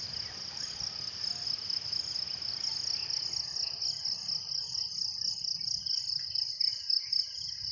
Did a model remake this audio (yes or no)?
no